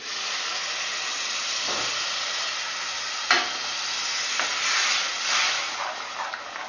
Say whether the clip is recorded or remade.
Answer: recorded